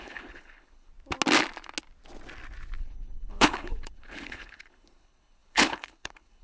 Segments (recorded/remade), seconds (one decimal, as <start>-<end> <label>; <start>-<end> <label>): 0.0-0.9 remade; 0.9-2.8 recorded; 2.8-6.4 remade